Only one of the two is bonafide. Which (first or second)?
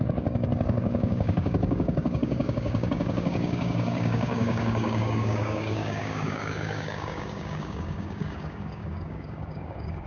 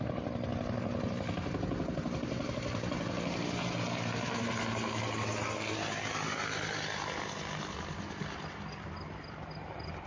second